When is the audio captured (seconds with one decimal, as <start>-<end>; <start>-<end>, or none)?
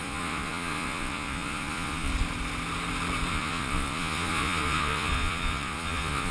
2.1-3.3